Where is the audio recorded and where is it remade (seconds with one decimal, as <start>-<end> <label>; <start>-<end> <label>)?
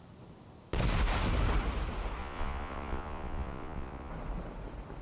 0.0-2.2 recorded; 2.2-4.1 remade; 4.1-5.0 recorded